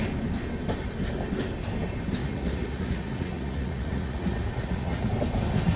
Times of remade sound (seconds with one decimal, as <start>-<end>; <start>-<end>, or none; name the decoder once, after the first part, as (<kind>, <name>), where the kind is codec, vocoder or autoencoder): 2.2-5.1 (vocoder, Vocos)